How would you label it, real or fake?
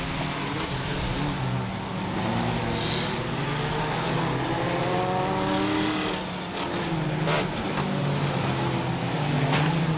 real